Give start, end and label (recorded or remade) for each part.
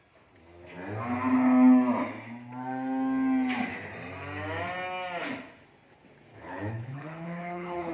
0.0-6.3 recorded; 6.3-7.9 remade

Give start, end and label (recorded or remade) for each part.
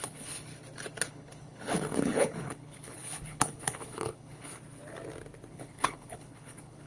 0.0-0.5 remade; 0.5-1.1 recorded; 1.1-4.5 remade; 4.5-5.5 recorded; 5.5-6.9 remade